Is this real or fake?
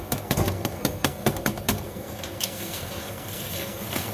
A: fake